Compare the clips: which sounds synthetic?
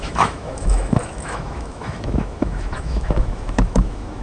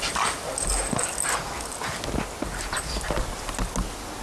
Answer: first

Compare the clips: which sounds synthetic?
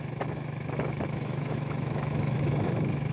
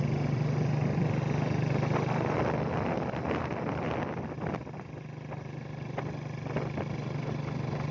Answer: first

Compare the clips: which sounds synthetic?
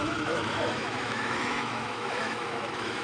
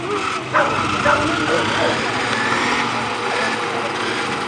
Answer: first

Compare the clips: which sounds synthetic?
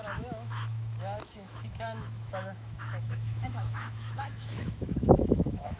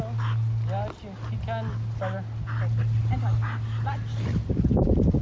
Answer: first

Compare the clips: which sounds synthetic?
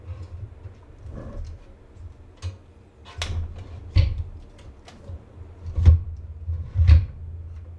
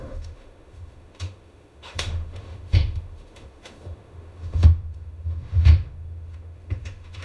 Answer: second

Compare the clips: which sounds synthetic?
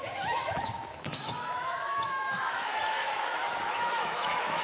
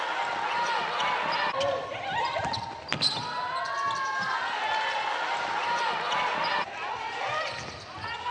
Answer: first